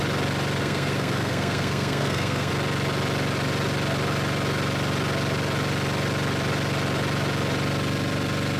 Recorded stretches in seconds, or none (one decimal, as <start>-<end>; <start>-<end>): 0.0-0.6; 2.5-8.6

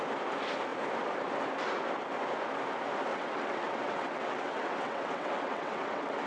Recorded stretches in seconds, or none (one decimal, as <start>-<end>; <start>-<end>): 0.0-3.1

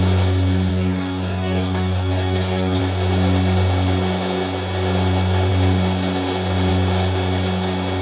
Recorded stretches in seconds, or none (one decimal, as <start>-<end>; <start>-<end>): 0.0-0.7; 2.8-8.0

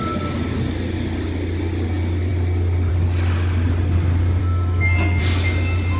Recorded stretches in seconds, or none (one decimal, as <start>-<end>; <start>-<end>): 0.0-4.4; 5.2-6.0